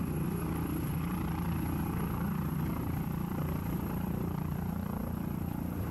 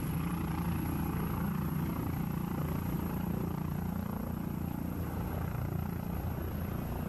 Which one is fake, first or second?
first